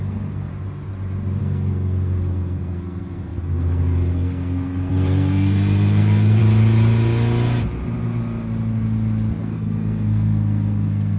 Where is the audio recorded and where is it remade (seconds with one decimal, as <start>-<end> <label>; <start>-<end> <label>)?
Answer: 0.0-0.5 remade; 0.5-1.4 recorded; 1.4-6.4 remade; 6.4-9.4 recorded; 9.4-11.2 remade